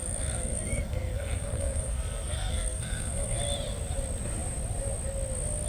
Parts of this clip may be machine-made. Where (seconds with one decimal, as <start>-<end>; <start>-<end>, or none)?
0.0-3.4